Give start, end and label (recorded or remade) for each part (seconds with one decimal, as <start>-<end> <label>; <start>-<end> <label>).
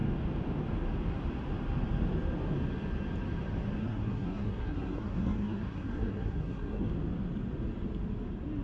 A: 0.0-3.8 recorded; 3.8-6.9 remade; 6.9-8.6 recorded